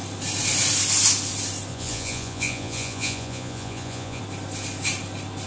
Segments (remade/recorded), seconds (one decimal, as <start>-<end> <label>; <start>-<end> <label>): 0.0-1.7 recorded; 1.7-4.2 remade; 4.2-5.5 recorded